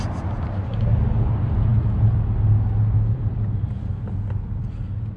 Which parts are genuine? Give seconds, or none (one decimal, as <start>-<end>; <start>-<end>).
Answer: 0.0-5.2